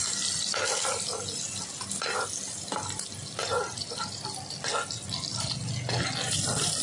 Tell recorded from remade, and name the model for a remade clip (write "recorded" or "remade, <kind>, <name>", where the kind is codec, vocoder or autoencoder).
recorded